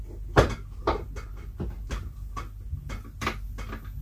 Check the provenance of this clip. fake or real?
real